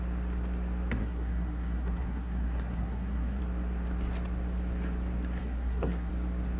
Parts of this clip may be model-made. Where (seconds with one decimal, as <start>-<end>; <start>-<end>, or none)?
1.0-3.4; 5.4-6.1